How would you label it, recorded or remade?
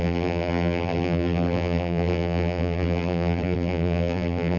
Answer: remade